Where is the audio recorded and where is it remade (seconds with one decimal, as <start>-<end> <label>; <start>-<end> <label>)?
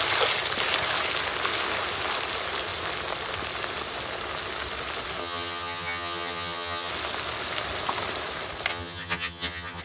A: 0.0-5.2 recorded; 5.2-6.9 remade; 6.9-8.7 recorded; 8.7-9.8 remade